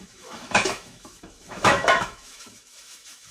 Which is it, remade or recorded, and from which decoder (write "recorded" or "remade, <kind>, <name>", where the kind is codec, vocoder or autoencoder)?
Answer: remade, autoencoder, DAC-VAE